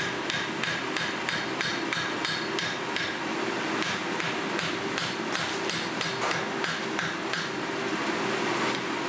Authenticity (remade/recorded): recorded